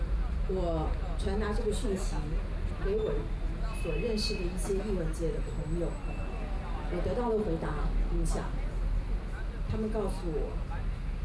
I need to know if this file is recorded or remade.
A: recorded